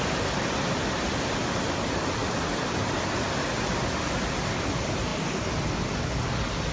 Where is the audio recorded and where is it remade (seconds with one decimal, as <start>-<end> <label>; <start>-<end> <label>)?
0.0-6.7 recorded